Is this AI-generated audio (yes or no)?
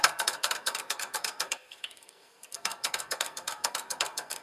yes